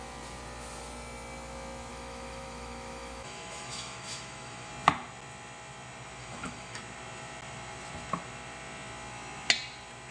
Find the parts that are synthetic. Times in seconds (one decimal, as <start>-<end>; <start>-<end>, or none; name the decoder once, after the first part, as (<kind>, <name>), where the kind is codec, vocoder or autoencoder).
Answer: 1.9-4.7 (autoencoder, DAC-VAE); 6.2-6.8